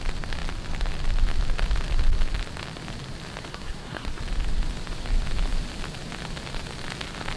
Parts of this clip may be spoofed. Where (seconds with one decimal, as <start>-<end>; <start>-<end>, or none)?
3.5-4.2

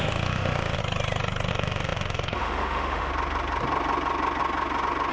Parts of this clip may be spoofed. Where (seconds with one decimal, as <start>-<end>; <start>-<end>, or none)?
0.0-0.8; 1.5-3.1